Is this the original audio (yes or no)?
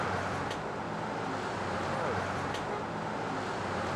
yes